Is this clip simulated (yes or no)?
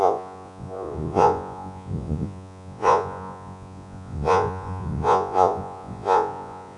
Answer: yes